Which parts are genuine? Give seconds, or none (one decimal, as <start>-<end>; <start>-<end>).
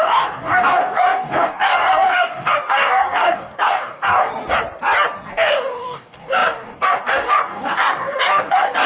4.3-5.3